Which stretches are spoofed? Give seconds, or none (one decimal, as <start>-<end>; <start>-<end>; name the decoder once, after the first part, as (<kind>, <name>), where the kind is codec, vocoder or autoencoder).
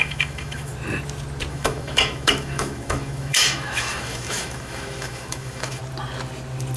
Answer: 0.0-0.7 (autoencoder, DAC-VAE); 1.5-5.8